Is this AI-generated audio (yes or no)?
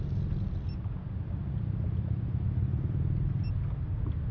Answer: no